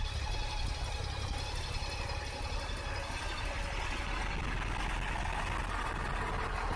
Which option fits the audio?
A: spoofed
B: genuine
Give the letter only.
B